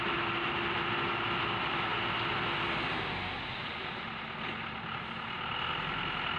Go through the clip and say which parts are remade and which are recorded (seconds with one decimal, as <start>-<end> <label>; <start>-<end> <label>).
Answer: 0.0-6.4 recorded

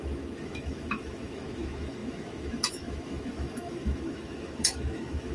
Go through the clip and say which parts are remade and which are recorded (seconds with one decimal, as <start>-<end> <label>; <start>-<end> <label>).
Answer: 0.0-5.3 remade

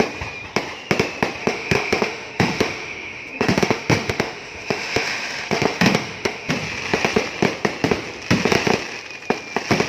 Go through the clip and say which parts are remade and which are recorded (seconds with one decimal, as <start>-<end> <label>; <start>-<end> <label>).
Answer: 0.0-1.4 recorded; 1.4-6.5 remade; 6.5-9.9 recorded

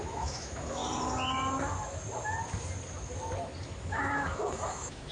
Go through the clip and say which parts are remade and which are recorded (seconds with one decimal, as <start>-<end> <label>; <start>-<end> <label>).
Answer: 0.0-0.8 remade; 0.8-3.9 recorded; 3.9-5.1 remade

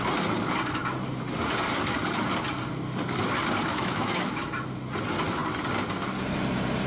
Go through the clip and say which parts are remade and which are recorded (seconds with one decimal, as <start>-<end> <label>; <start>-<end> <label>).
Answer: 0.0-3.7 recorded; 3.7-4.5 remade; 4.5-6.9 recorded

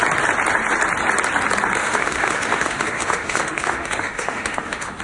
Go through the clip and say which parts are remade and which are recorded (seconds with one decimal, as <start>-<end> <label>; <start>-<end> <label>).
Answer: 0.0-1.8 recorded; 1.8-5.0 remade

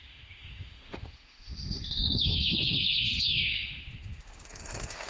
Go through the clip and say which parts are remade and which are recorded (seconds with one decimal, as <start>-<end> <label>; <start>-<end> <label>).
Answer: 0.0-5.1 remade

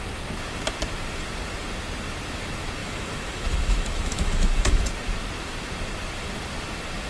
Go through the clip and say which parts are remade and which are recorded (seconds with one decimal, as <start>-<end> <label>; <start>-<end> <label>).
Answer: 0.0-2.8 recorded; 2.8-4.8 remade; 4.8-7.1 recorded